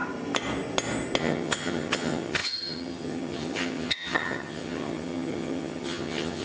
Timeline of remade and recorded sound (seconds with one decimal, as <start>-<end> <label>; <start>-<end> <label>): 0.0-1.2 recorded; 1.2-6.4 remade